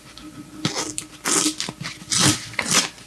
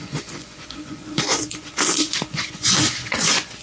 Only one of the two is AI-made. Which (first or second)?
second